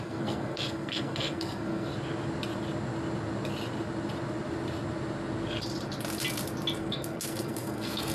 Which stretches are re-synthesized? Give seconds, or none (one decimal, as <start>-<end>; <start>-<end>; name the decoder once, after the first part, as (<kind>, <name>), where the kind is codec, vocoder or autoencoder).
0.0-1.9 (codec, SNAC); 6.8-8.1